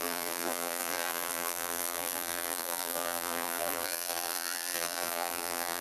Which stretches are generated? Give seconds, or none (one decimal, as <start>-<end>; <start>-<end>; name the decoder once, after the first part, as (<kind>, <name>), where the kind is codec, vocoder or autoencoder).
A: 0.0-5.8 (vocoder, BigVGAN v2)